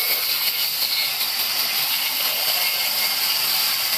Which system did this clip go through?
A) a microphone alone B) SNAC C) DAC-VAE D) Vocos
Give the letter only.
A